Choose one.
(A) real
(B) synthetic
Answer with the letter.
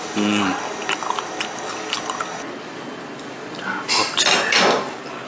A